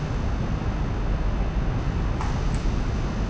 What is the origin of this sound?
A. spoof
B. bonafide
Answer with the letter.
B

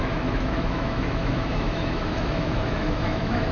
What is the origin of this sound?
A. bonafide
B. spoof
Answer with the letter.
B